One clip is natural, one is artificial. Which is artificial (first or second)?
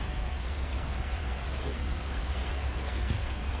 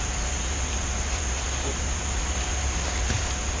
first